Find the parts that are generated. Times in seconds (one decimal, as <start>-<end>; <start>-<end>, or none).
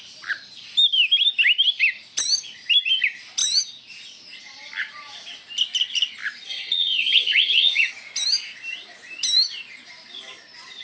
6.5-7.9